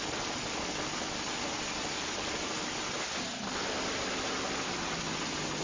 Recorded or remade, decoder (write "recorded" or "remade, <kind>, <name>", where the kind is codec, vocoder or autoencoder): recorded